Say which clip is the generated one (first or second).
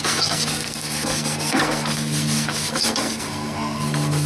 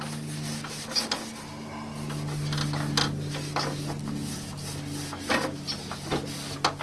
first